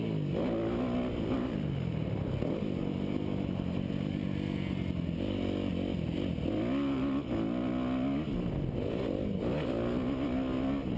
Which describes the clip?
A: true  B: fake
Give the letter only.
A